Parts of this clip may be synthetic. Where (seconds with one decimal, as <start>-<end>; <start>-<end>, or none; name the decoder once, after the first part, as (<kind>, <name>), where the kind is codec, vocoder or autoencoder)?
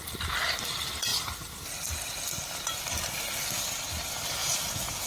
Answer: 4.4-5.1 (vocoder, Vocos)